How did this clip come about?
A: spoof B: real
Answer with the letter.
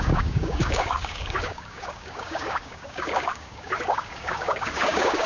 A